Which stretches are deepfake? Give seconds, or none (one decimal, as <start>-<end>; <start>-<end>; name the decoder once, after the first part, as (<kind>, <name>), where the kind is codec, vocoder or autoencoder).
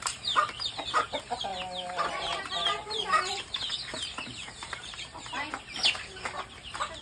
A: 0.0-1.5 (vocoder, BigVGAN v2); 2.1-3.0; 3.7-7.0